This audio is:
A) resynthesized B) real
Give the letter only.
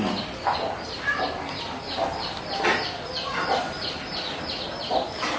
B